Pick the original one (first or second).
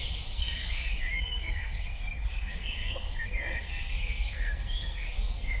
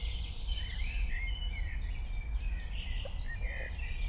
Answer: second